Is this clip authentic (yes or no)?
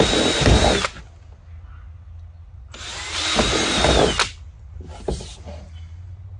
yes